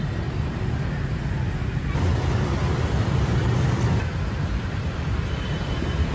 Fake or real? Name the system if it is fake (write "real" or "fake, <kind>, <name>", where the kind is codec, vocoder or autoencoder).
real